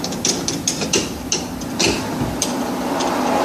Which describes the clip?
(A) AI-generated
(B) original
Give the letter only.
A